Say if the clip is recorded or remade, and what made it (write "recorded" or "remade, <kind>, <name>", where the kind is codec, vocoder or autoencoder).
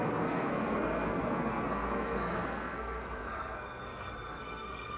remade, codec, SNAC